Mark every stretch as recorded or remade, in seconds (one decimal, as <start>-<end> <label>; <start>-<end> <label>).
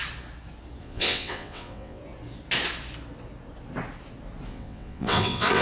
0.0-0.8 recorded; 0.8-2.0 remade; 2.0-4.5 recorded; 4.5-5.6 remade